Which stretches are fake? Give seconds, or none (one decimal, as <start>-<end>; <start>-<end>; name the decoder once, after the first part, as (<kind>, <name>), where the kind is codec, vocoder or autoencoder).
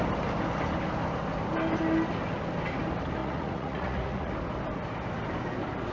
3.2-4.3 (vocoder, Vocos)